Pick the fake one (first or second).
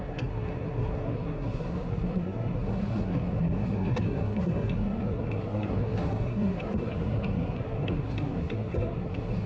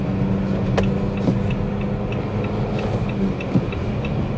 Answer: first